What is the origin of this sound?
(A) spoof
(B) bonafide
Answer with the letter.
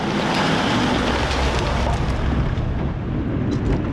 B